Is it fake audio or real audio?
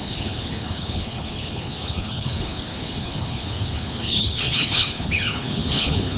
fake